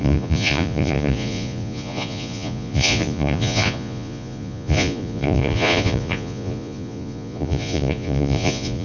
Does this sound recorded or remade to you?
remade